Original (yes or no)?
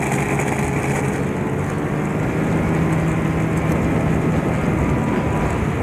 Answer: yes